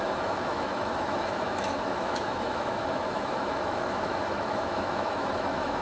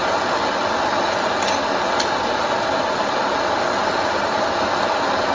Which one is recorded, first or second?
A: second